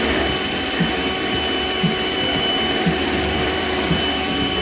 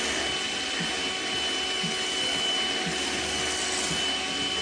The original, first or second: second